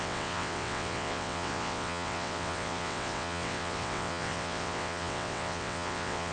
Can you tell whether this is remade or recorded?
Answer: remade